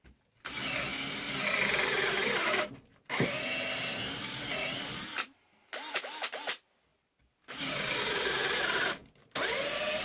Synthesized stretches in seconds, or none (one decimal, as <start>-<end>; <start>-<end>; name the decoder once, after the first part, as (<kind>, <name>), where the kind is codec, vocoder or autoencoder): none